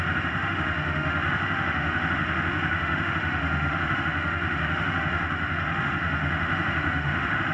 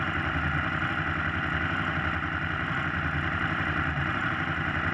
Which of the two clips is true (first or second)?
second